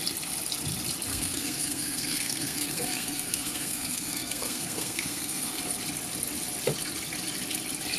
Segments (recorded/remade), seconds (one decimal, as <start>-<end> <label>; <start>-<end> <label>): 0.0-1.1 recorded; 1.1-5.6 remade; 5.6-8.0 recorded